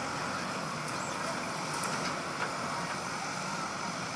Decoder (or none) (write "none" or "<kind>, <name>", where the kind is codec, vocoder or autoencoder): none